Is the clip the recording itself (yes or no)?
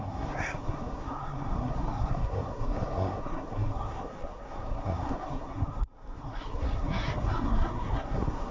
no